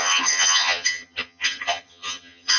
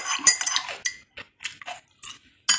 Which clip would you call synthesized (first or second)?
first